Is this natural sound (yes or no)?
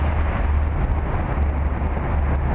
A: yes